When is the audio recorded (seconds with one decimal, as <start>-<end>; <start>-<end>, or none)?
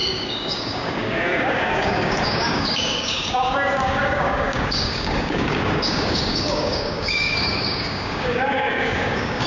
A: none